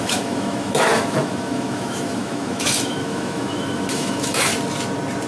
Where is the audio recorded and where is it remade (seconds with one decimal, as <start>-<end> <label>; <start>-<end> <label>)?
0.0-4.5 remade; 4.5-5.3 recorded